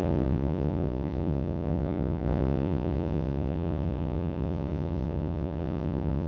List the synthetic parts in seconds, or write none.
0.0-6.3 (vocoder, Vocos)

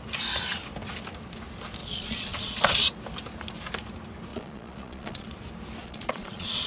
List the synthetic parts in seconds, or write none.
1.8-2.9 (vocoder, Vocos); 4.3-5.3; 5.8-6.7

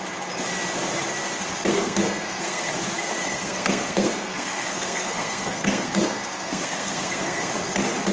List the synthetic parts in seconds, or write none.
1.7-2.7 (codec, SNAC); 3.2-7.5

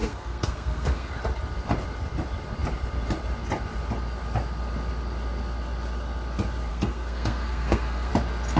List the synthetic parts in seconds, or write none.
0.0-1.1 (codec, SNAC); 6.7-8.1

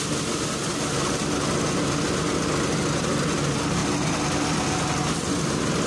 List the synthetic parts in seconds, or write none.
none

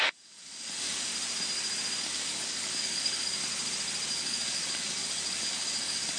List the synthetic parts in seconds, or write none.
0.0-1.1 (codec, DAC); 2.0-3.4; 4.1-6.2

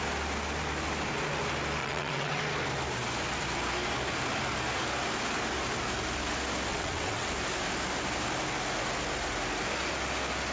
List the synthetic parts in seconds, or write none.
1.8-2.4 (vocoder, WaveNeXt); 6.7-7.3